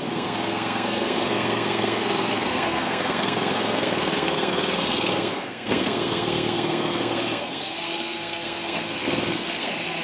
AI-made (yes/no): yes